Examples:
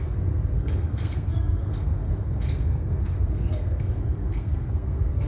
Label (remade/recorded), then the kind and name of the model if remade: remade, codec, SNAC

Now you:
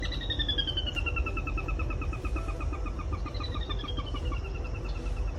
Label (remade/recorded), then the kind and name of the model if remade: recorded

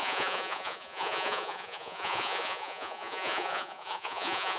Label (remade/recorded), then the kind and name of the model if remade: remade, vocoder, Vocos